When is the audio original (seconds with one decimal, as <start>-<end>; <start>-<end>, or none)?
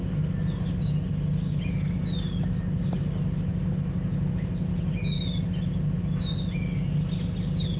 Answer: 0.0-7.8